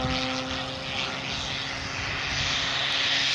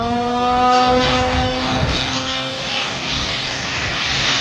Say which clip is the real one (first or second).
first